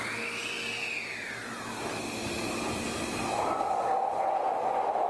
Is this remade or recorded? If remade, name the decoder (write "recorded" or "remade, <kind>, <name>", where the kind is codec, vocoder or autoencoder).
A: recorded